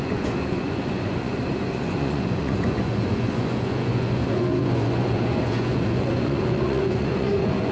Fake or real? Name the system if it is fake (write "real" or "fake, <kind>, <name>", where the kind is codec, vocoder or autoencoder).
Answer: fake, vocoder, Vocos